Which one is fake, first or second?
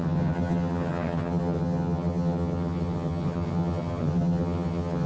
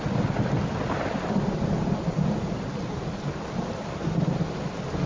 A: first